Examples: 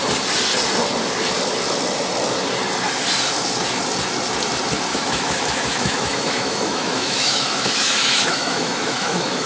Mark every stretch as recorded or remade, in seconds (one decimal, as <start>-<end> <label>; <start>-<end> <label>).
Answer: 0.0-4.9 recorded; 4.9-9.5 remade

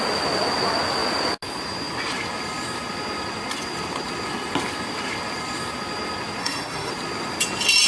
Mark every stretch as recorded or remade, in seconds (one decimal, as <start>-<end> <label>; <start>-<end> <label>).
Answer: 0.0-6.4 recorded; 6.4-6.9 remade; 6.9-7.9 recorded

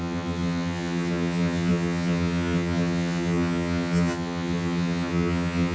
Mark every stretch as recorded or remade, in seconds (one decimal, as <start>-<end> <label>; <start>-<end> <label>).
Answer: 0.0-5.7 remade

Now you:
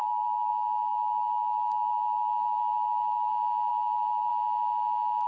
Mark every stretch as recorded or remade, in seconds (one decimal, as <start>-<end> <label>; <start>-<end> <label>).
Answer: 0.0-0.5 remade; 0.5-0.9 recorded; 0.9-3.3 remade; 3.3-3.7 recorded; 3.7-4.3 remade; 4.3-5.3 recorded

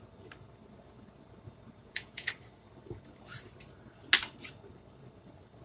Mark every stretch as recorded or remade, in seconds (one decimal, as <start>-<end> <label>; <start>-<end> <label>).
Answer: 0.0-1.8 recorded; 1.8-2.3 remade; 2.3-5.6 recorded